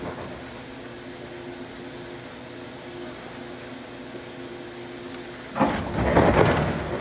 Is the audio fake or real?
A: real